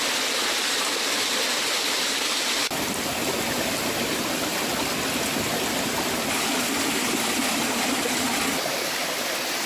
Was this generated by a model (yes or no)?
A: no